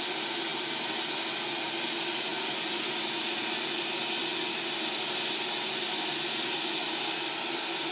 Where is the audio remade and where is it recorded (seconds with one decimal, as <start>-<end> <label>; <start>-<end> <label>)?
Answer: 0.0-7.9 recorded